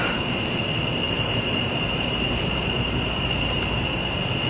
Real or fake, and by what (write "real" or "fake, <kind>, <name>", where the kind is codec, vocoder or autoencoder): fake, vocoder, BigVGAN v2